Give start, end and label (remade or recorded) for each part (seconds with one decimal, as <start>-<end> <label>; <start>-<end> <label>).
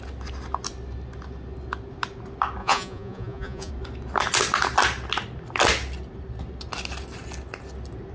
0.0-2.6 recorded; 2.6-3.7 remade; 3.7-8.1 recorded